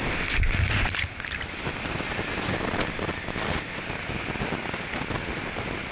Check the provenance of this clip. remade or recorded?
recorded